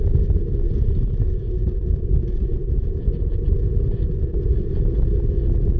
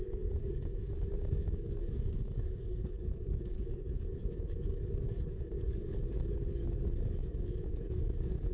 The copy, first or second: second